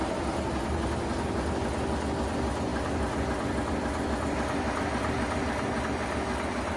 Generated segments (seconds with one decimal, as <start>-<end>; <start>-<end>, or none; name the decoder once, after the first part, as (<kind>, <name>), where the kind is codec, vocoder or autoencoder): none